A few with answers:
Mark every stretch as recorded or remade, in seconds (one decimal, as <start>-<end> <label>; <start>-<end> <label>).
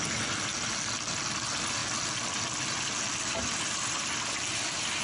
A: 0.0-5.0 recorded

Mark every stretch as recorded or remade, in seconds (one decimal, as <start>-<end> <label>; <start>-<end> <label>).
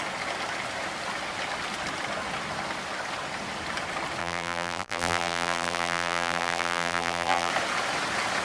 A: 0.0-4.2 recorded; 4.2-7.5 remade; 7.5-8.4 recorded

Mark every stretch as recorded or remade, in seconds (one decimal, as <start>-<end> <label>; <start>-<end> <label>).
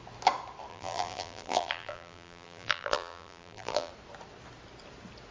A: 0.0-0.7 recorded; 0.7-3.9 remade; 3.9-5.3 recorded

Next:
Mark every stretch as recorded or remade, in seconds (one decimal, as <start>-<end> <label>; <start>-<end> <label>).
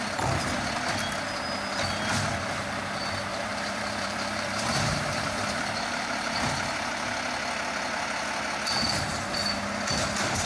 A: 0.0-3.3 recorded; 3.3-6.9 remade; 6.9-10.5 recorded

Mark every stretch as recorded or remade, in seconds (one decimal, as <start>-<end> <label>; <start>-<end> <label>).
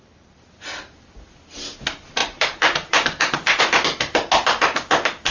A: 0.0-2.2 recorded; 2.2-3.6 remade; 3.6-5.3 recorded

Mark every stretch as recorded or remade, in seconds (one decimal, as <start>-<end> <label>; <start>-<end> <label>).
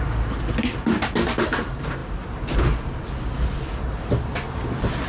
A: 0.0-5.1 recorded